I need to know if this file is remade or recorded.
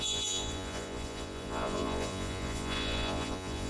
remade